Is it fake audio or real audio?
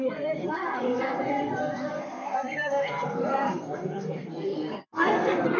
fake